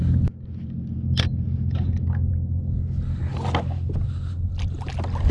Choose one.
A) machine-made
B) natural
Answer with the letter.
B